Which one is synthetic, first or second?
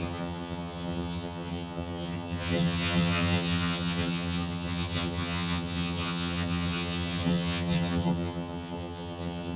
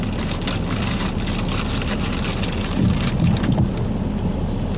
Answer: first